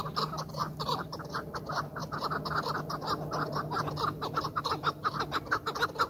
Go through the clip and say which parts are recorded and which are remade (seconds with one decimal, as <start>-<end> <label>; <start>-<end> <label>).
0.0-0.6 recorded; 0.6-1.6 remade; 1.6-6.1 recorded